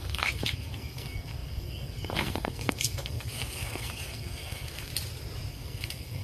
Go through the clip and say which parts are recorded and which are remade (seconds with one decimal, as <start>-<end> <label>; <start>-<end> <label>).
0.0-4.9 remade; 4.9-5.5 recorded; 5.5-6.2 remade